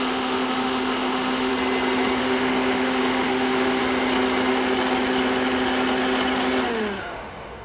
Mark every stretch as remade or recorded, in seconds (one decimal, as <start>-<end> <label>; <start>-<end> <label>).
0.0-1.5 remade; 1.5-2.2 recorded; 2.2-3.8 remade; 3.8-7.0 recorded; 7.0-7.6 remade